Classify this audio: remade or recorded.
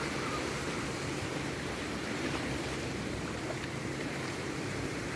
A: remade